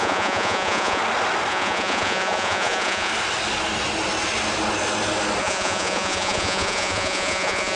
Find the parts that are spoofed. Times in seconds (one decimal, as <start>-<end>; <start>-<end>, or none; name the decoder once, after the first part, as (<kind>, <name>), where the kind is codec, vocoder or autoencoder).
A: 0.0-1.0 (vocoder, Vocos); 1.5-3.1; 5.4-7.8